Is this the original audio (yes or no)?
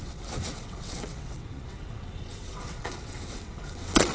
no